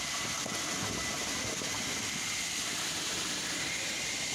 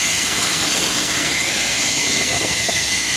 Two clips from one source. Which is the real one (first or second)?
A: first